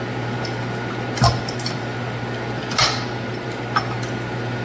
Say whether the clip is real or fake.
real